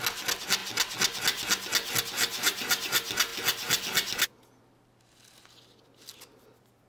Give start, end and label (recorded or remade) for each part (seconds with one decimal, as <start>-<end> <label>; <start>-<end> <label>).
0.0-6.9 recorded